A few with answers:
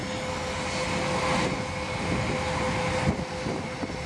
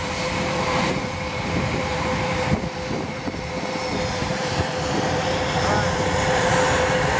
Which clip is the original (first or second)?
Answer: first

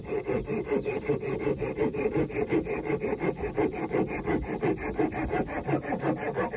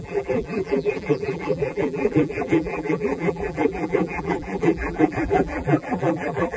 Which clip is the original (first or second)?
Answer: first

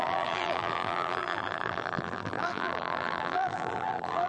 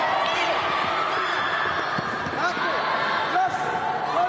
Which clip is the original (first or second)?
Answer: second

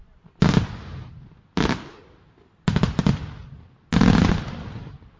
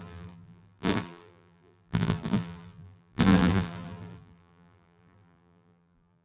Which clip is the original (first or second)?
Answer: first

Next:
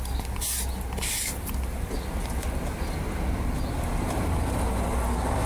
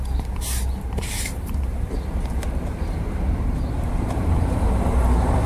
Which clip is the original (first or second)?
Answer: first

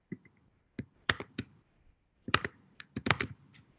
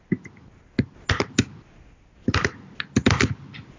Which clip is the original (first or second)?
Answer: second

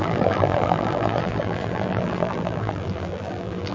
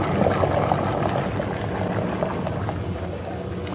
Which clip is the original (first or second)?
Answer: second